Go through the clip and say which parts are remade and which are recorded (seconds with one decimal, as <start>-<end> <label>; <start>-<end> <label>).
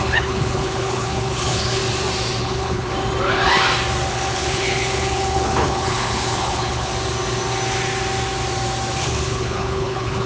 0.0-1.8 remade; 1.8-2.4 recorded; 2.4-2.9 remade; 2.9-4.1 recorded; 4.1-6.9 remade; 6.9-9.0 recorded; 9.0-10.3 remade